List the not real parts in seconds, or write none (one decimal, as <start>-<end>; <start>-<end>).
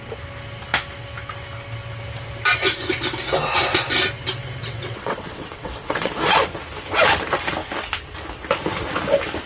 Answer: 4.6-6.1